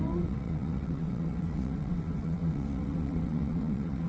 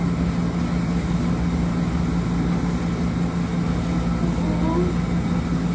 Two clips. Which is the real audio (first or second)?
second